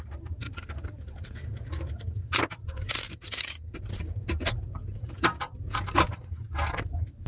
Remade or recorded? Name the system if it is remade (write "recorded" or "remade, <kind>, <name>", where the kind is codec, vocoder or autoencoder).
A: remade, vocoder, BigVGAN v2